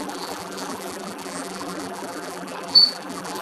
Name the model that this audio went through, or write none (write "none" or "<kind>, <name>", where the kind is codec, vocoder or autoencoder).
vocoder, BigVGAN v2